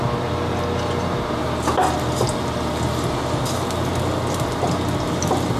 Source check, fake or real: real